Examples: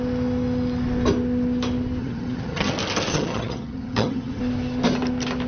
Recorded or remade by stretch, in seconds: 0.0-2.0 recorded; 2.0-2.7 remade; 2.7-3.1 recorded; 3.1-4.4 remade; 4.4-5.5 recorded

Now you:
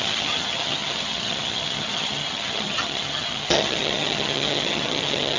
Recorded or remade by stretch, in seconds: 0.0-5.4 remade

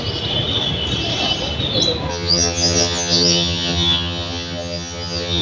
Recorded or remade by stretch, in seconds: 0.0-2.1 recorded; 2.1-5.4 remade

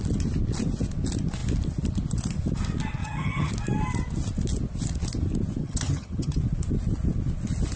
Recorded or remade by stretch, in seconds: 0.0-3.0 recorded; 3.0-3.5 remade; 3.5-5.6 recorded; 5.6-6.4 remade; 6.4-7.8 recorded

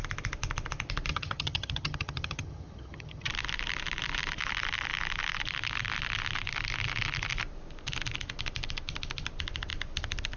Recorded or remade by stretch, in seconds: 0.0-1.1 recorded; 1.1-3.3 remade; 3.3-10.4 recorded

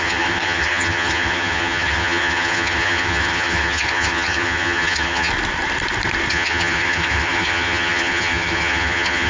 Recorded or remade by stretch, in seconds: 0.0-5.3 remade; 5.3-6.3 recorded; 6.3-9.3 remade

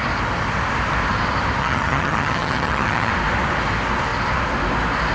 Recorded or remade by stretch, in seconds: 0.0-1.6 recorded; 1.6-3.1 remade; 3.1-5.1 recorded